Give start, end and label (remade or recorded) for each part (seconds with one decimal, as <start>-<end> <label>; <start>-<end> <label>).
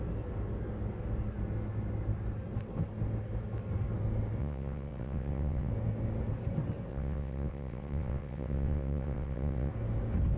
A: 0.0-4.4 recorded; 4.4-5.7 remade; 5.7-6.9 recorded; 6.9-9.7 remade; 9.7-10.4 recorded